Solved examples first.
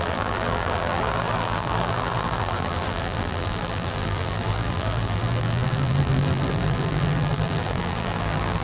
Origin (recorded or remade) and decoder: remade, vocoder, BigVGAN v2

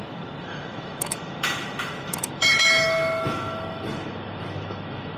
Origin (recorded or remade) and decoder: remade, autoencoder, DAC-VAE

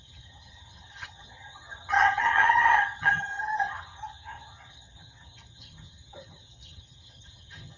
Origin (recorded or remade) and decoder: remade, vocoder, HiFi-GAN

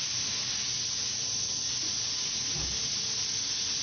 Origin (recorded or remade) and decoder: recorded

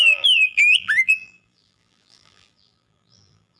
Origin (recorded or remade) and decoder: remade, vocoder, BigVGAN v2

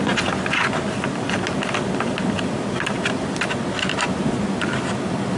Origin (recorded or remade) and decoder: recorded